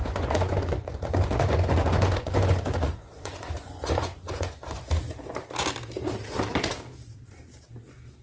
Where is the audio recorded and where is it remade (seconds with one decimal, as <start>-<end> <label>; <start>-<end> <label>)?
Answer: 0.0-4.9 remade; 4.9-8.2 recorded